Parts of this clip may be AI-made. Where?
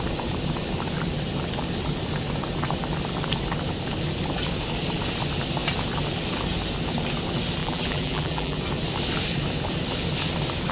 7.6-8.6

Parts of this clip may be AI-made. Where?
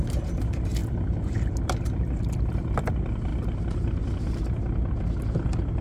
none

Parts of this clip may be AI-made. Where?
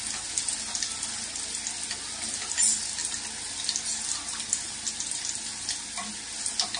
none